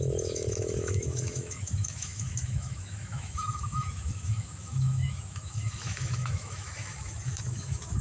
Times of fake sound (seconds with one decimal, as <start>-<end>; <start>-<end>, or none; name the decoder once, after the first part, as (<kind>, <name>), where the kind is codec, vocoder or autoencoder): 0.0-8.0 (autoencoder, DAC-VAE)